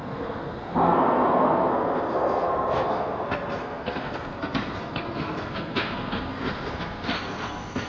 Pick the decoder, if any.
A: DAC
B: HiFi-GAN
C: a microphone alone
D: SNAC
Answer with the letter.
D